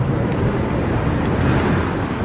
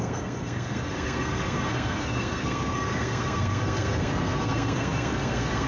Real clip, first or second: first